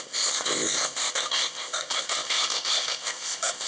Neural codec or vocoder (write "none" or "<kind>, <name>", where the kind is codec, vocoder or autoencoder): codec, ZipCodec